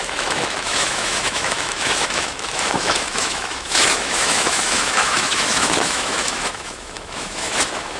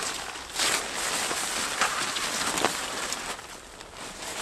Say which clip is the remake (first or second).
first